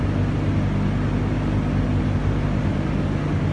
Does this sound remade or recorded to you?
recorded